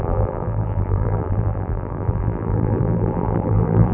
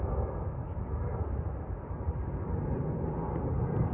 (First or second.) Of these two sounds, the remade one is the first